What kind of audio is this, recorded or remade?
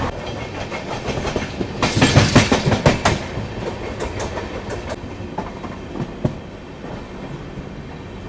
recorded